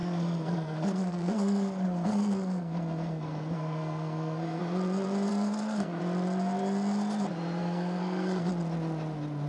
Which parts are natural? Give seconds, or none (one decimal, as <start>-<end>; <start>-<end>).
4.6-5.3; 6.0-7.6; 8.5-9.5